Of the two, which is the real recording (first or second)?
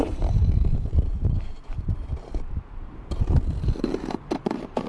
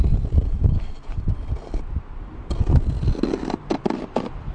second